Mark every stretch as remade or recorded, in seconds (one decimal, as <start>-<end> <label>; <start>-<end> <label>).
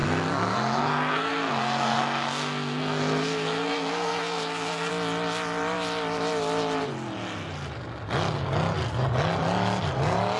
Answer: 0.0-4.9 remade; 4.9-10.4 recorded